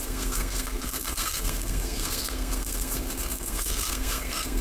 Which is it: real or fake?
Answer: fake